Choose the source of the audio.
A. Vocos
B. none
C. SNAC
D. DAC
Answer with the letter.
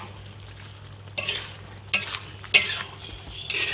B